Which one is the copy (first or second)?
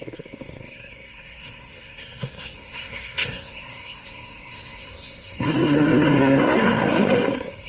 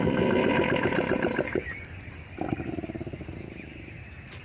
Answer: first